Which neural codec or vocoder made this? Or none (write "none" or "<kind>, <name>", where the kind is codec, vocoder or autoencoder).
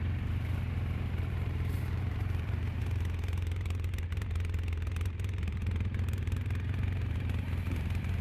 vocoder, BigVGAN v2